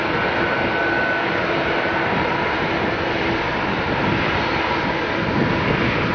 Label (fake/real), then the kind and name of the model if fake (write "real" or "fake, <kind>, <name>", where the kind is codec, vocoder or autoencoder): real